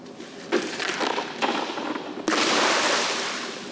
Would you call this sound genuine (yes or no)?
yes